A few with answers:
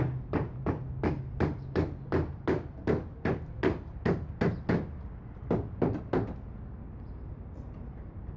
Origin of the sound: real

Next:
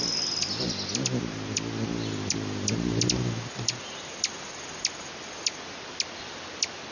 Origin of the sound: real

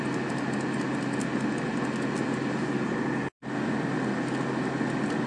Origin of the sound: real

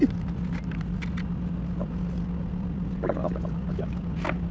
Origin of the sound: real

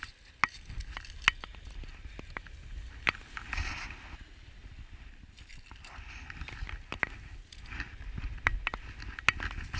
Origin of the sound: real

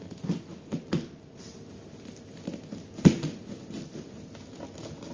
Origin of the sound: real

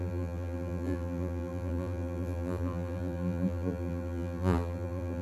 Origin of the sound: fake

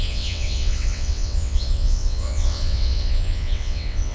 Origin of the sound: fake